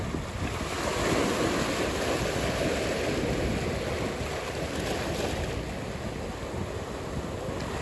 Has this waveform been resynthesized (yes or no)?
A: no